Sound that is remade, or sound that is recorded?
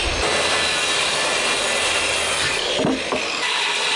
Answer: remade